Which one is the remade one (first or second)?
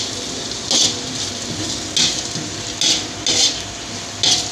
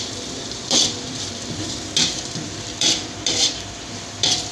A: second